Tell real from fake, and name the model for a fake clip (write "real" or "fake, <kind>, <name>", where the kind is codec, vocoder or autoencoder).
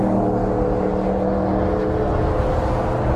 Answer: real